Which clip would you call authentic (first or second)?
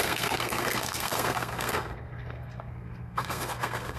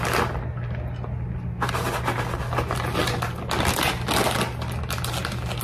second